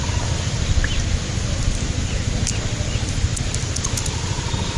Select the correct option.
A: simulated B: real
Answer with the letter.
B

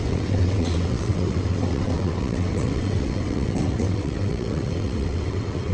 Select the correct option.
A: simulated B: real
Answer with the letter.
A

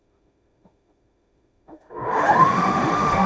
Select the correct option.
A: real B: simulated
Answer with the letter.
B